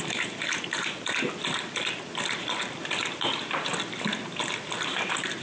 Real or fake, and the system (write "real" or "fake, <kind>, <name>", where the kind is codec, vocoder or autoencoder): real